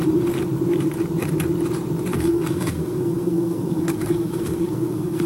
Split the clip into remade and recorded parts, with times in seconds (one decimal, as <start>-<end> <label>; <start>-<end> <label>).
0.0-2.1 recorded; 2.1-5.3 remade